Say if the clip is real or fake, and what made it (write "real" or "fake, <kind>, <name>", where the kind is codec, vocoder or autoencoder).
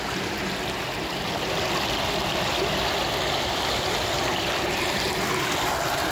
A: real